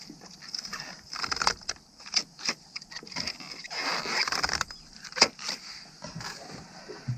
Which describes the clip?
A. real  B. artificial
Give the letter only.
A